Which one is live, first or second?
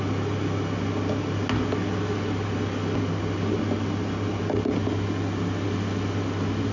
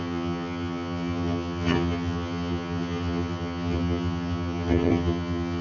first